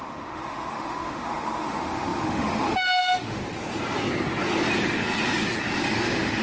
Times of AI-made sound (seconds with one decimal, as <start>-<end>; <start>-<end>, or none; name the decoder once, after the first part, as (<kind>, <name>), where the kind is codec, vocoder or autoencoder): 0.0-3.4 (autoencoder, DAC-VAE); 6.0-6.4